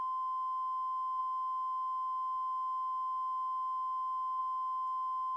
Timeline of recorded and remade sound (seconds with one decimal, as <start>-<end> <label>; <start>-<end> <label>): 0.0-5.4 recorded